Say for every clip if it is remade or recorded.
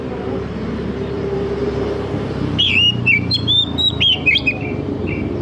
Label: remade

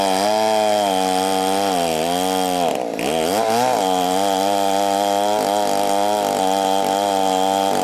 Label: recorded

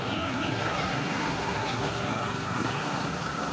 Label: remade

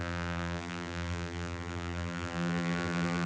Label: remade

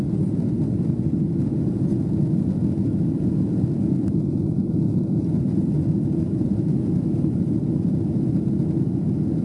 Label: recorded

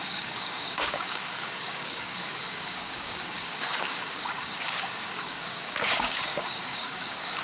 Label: remade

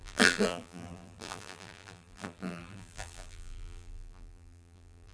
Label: remade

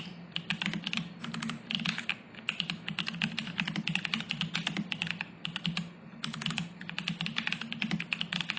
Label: recorded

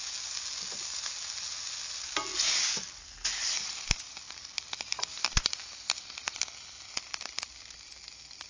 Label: recorded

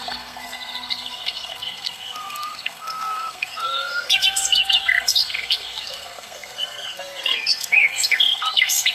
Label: remade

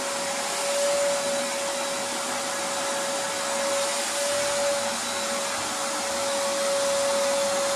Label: recorded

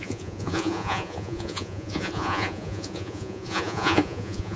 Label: remade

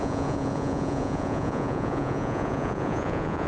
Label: remade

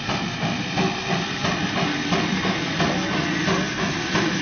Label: recorded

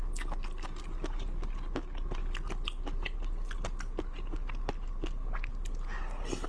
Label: recorded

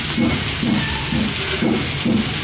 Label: recorded